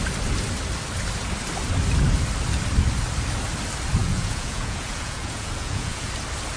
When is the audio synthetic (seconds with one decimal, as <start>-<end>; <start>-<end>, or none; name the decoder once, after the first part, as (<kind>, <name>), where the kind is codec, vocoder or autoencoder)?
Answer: 4.0-6.1 (vocoder, Vocos)